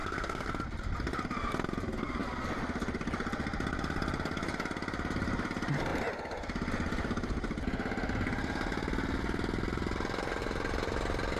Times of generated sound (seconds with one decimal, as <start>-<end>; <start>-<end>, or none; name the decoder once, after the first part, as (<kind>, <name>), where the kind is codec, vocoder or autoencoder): 0.0-0.5 (codec, SNAC)